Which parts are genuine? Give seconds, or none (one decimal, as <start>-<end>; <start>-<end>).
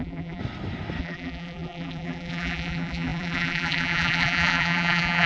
0.4-1.0